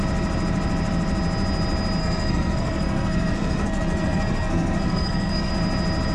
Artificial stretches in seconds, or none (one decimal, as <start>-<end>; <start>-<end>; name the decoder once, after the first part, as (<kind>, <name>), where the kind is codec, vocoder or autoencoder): 2.0-5.5 (codec, SNAC)